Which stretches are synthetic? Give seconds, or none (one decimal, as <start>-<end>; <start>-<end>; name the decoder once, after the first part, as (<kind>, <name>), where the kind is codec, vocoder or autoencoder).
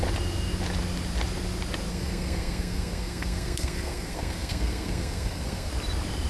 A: 1.9-5.7 (codec, SNAC)